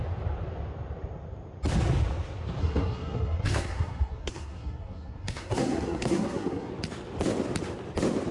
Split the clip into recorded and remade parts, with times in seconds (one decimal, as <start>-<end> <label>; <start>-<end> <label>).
0.0-2.6 recorded; 2.6-6.7 remade; 6.7-8.3 recorded